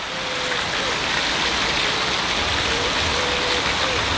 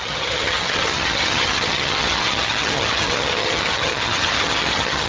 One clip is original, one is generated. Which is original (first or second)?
first